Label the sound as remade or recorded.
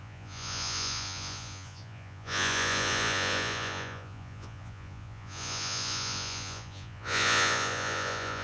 remade